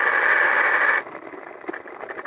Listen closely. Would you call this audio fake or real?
real